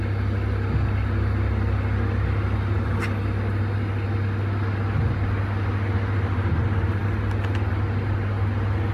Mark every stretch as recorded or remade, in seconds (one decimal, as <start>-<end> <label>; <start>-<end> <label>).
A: 0.0-8.9 recorded